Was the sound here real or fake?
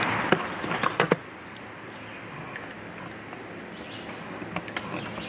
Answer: real